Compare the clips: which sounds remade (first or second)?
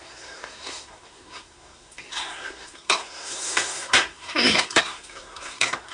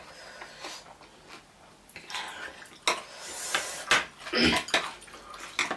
first